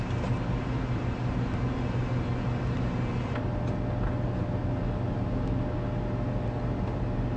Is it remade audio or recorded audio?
recorded